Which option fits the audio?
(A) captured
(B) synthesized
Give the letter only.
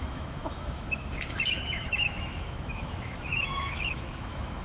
B